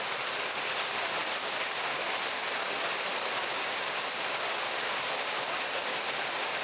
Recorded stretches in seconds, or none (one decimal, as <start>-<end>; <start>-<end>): 0.0-6.6